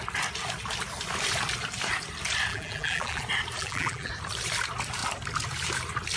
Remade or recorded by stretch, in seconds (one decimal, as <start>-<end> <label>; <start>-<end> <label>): 0.0-2.5 recorded; 2.5-3.2 remade; 3.2-3.6 recorded; 3.6-4.1 remade; 4.1-6.2 recorded